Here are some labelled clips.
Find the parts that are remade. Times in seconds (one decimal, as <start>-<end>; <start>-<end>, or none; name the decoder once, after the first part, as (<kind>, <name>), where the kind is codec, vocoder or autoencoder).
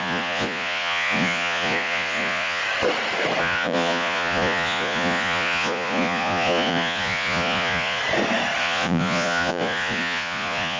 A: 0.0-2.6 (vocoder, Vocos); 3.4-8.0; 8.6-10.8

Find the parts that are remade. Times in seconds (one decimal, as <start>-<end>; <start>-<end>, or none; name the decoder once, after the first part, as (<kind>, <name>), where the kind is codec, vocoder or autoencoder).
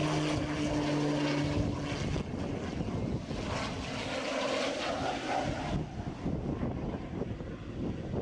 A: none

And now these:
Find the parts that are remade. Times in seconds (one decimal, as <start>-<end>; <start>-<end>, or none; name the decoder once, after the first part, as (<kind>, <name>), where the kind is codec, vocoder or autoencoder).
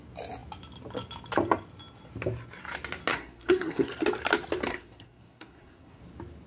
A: 3.1-3.9 (codec, SNAC); 4.7-6.0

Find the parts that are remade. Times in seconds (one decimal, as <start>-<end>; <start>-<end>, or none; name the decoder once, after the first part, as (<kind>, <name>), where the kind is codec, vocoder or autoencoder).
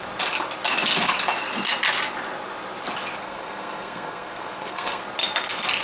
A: 3.2-5.0 (codec, SNAC)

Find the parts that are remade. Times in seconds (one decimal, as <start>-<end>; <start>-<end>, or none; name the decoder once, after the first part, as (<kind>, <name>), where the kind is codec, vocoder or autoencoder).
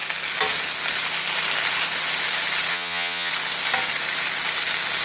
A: 2.7-3.3 (vocoder, HiFi-GAN)